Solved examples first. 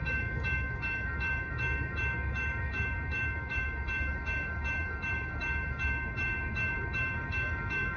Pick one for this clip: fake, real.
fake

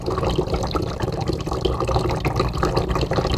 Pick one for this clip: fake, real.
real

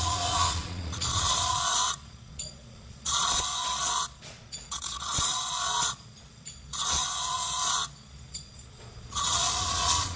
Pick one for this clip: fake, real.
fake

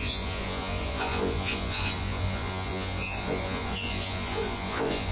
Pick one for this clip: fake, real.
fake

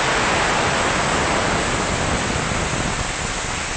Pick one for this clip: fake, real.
real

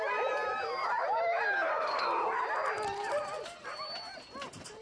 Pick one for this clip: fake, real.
real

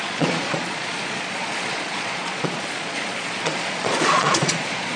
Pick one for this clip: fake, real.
fake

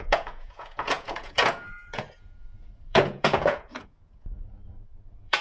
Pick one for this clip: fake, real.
fake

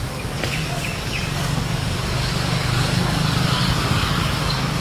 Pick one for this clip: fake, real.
fake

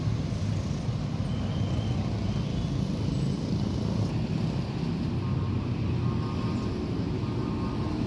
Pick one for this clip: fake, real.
real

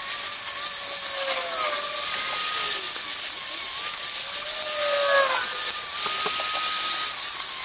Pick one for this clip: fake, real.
real